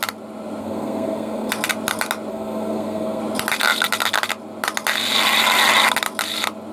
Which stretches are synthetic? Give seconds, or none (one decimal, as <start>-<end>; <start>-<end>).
0.6-1.5; 2.3-3.2

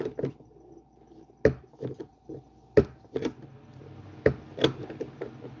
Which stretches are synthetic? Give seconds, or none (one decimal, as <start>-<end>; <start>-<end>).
none

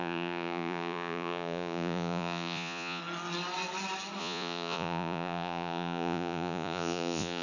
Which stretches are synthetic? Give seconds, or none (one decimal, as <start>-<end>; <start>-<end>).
0.0-3.0; 4.2-7.4

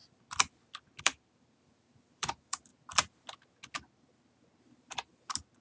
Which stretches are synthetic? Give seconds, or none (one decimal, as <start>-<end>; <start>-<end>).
1.0-2.7

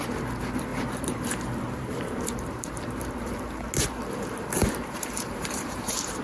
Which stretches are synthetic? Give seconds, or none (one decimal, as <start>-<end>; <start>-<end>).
0.7-3.3; 4.6-6.2

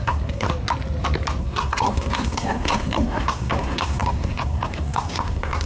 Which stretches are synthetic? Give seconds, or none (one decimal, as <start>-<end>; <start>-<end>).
0.0-0.5; 1.4-5.7

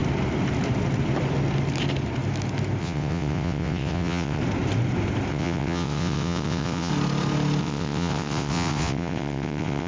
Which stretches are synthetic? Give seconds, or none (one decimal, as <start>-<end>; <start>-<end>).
2.8-4.4; 5.3-6.9; 7.6-9.9